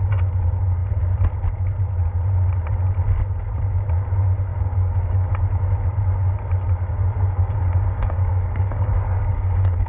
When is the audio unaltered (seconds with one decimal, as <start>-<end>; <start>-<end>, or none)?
0.0-4.5; 5.3-7.4